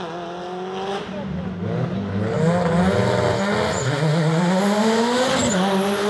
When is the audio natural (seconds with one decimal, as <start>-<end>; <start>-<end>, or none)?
0.0-4.1; 5.3-6.1